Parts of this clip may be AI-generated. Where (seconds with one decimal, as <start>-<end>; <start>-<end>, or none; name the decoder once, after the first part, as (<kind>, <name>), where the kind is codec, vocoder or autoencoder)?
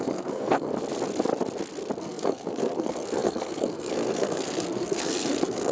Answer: 0.0-0.7 (codec, SNAC); 2.0-5.7